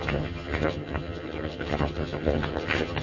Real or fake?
fake